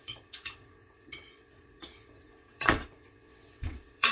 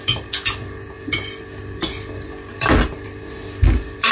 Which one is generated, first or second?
first